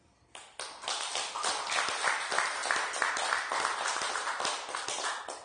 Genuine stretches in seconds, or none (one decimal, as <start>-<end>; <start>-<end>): 0.0-5.4